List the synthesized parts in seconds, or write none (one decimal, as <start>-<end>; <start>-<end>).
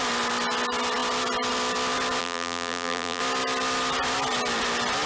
2.2-3.2